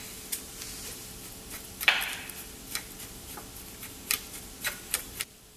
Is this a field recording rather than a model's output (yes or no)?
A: no